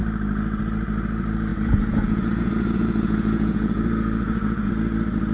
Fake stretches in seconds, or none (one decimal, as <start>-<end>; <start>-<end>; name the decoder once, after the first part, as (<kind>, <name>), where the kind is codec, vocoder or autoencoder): 1.5-4.7 (vocoder, Vocos)

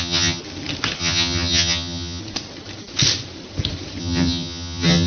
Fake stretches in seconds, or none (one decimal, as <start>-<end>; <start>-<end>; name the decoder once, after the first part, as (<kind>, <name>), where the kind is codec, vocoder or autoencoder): 0.0-0.4 (vocoder, HiFi-GAN); 1.0-2.2; 4.0-5.1

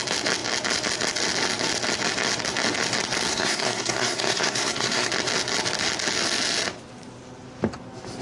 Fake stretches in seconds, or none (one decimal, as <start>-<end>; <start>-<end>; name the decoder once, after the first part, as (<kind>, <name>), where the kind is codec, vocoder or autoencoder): 3.3-5.1 (codec, SNAC)

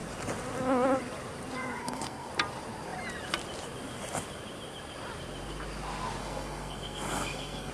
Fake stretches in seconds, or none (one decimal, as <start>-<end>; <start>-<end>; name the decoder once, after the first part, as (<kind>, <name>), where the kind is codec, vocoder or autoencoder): 1.8-2.3 (codec, SNAC); 6.2-7.7